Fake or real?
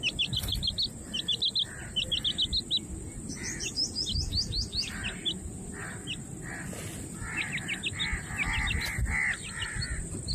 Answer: real